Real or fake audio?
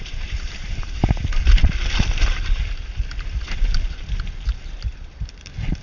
real